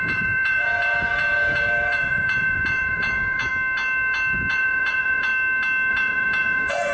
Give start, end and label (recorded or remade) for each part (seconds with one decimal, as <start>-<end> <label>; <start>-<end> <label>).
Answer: 0.0-3.5 remade; 3.5-4.5 recorded; 4.5-5.3 remade; 5.3-5.9 recorded; 5.9-6.9 remade